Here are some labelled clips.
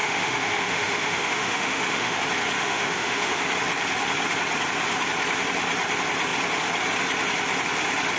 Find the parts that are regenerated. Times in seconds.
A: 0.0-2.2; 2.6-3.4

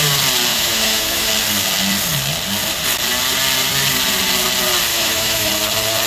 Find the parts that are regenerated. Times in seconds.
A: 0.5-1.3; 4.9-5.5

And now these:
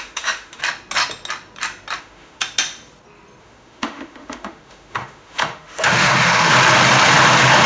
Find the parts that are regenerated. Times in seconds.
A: 0.0-0.6; 2.0-2.4; 3.4-6.5

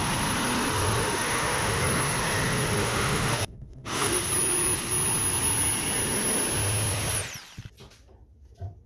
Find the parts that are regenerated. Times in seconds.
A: 1.0-1.8; 2.8-4.2

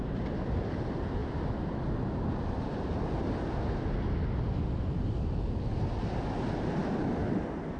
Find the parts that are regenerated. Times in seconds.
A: none

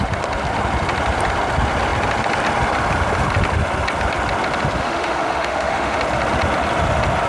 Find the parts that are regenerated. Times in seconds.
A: 4.8-6.0

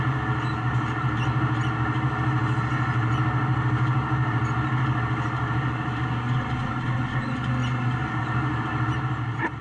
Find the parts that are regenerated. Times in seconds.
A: none

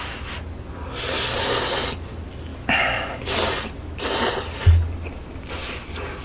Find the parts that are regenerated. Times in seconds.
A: 2.5-3.4